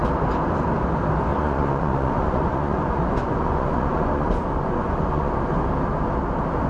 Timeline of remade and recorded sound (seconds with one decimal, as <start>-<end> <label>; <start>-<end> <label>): 0.0-1.3 recorded; 1.3-5.3 remade; 5.3-6.7 recorded